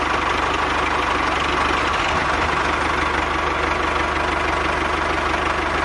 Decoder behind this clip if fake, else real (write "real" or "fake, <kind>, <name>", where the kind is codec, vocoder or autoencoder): real